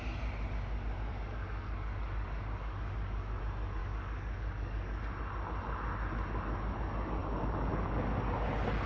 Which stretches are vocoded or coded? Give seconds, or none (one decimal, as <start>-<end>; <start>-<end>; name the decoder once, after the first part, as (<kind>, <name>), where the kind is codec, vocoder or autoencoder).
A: 1.1-3.4 (codec, DAC); 3.8-5.0